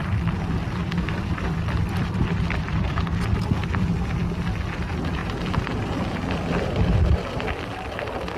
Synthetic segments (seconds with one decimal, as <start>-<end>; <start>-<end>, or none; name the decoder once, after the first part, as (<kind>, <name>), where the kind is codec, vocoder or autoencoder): 0.0-3.0 (vocoder, BigVGAN v2); 5.2-7.5